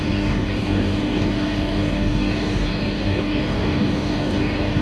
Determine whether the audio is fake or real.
fake